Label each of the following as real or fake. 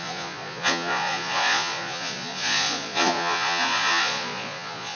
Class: fake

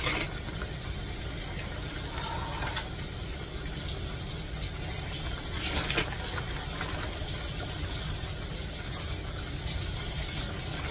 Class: real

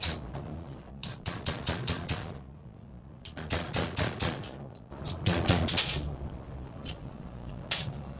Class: fake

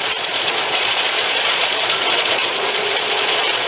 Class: fake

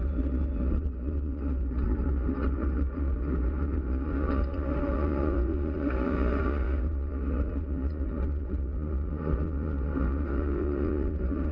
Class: fake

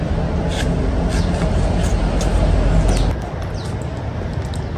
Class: real